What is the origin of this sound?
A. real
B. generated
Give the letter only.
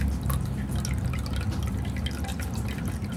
A